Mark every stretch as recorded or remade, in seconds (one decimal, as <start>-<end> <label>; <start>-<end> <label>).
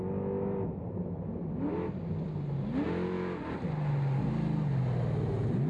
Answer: 0.0-5.7 recorded